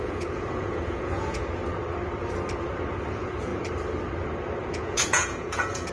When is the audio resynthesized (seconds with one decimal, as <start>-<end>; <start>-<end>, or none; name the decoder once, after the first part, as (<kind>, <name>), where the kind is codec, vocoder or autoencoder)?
0.0-1.6 (vocoder, Vocos); 3.1-3.5; 4.7-5.9